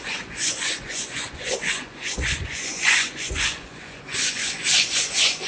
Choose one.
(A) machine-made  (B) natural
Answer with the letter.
A